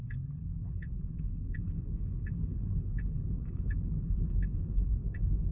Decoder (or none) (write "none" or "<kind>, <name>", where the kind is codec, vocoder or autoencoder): codec, HILCodec